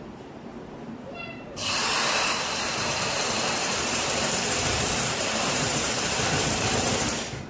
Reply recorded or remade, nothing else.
remade